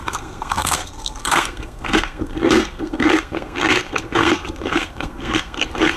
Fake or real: fake